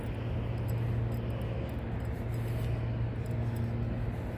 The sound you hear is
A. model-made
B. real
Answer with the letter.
B